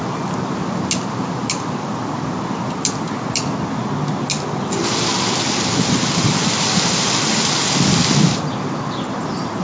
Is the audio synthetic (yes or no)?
no